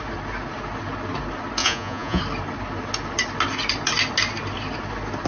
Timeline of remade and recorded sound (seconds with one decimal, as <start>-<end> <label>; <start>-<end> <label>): 0.0-1.6 recorded; 1.6-2.2 remade; 2.2-5.3 recorded